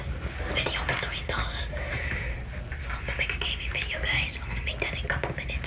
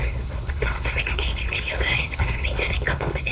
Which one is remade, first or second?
second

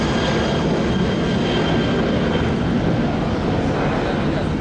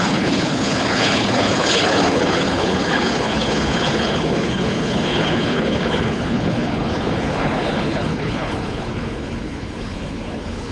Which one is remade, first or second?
second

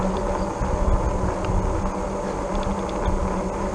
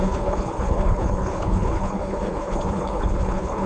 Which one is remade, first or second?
second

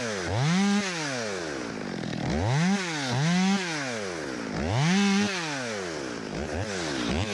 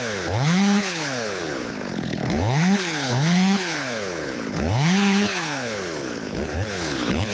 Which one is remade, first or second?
second